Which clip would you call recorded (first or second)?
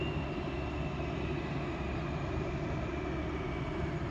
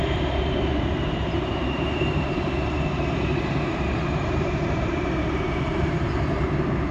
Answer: first